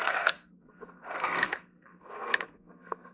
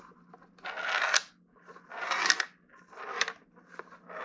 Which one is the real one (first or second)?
second